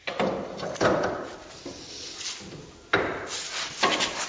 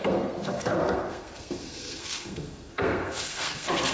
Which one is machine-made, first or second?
second